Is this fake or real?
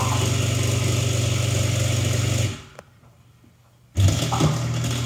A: real